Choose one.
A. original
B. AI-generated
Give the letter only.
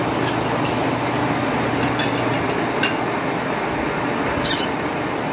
A